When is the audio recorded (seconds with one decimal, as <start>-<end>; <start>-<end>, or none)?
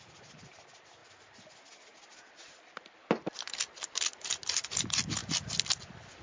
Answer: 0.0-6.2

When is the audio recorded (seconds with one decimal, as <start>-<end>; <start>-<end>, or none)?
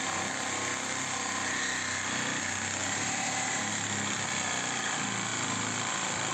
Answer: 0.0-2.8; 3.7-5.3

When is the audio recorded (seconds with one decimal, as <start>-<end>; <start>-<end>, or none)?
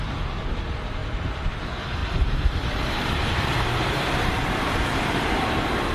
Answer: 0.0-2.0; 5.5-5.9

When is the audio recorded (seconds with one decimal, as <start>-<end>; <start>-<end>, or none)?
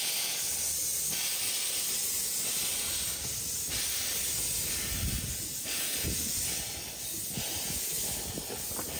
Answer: 0.0-9.0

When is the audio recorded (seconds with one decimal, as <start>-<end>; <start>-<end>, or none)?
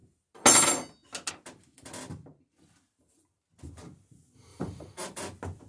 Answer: 0.0-4.5; 5.2-5.7